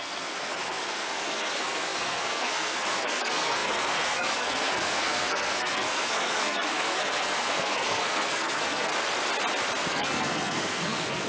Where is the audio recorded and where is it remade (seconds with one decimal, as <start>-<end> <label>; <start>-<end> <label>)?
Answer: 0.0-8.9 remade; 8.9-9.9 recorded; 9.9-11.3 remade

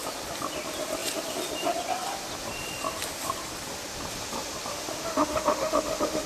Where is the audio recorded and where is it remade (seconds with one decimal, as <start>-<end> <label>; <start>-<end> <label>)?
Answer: 0.0-4.7 recorded; 4.7-6.3 remade

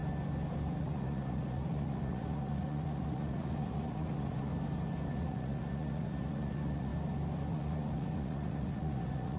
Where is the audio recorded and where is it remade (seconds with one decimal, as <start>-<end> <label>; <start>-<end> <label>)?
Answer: 0.0-0.8 recorded; 0.8-4.5 remade; 4.5-5.1 recorded; 5.1-6.9 remade; 6.9-7.5 recorded; 7.5-9.4 remade

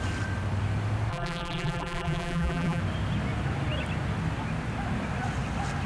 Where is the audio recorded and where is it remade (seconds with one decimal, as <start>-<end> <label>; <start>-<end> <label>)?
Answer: 0.0-1.1 recorded; 1.1-2.8 remade; 2.8-5.9 recorded

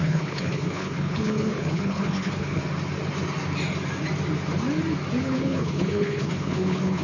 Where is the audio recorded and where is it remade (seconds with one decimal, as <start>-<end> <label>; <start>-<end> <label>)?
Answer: 0.0-2.6 remade; 2.6-5.2 recorded; 5.2-7.0 remade